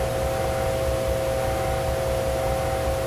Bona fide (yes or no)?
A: yes